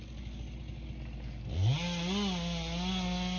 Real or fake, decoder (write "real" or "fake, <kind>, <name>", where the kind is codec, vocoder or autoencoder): real